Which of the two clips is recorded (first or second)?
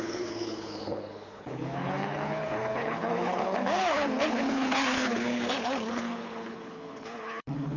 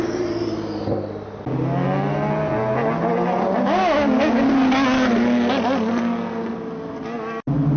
second